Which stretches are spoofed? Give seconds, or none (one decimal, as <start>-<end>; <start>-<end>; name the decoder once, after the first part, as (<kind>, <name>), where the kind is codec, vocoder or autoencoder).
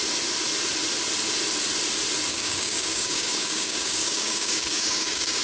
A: 2.3-5.4 (codec, DAC)